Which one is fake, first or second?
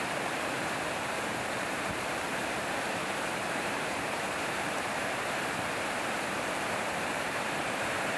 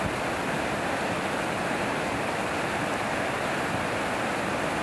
first